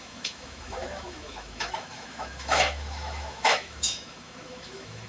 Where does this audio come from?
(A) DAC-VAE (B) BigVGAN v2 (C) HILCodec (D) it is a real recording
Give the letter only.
A